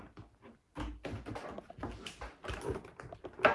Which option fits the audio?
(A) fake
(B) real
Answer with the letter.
B